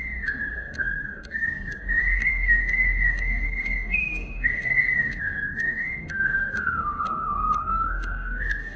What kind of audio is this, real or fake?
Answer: fake